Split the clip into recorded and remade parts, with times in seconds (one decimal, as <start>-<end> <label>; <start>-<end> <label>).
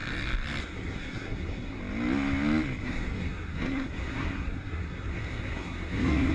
0.0-0.6 recorded; 0.6-1.8 remade; 1.8-2.8 recorded; 2.8-6.3 remade